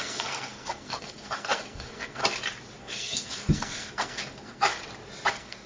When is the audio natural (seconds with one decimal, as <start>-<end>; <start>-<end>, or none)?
2.2-2.8; 4.7-5.3